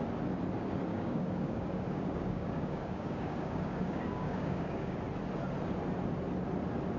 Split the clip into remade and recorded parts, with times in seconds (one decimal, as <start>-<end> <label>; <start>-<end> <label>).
0.0-0.9 recorded; 0.9-5.0 remade; 5.0-7.0 recorded